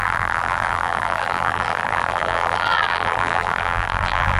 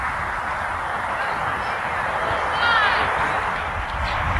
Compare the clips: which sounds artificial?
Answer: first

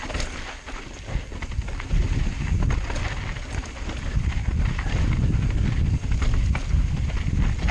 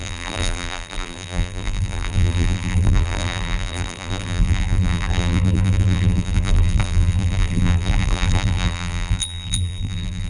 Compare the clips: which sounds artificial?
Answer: second